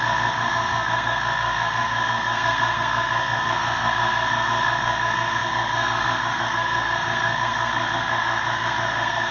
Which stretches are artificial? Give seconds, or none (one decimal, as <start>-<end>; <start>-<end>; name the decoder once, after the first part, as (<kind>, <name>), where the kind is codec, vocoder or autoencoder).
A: 0.0-9.3 (codec, SNAC)